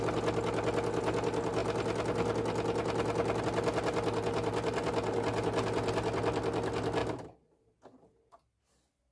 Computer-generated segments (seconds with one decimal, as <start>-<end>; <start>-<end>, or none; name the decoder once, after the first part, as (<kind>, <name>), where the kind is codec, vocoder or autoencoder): none